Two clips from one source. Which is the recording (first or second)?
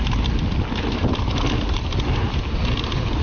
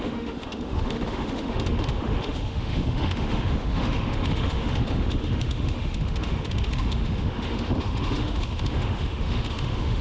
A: first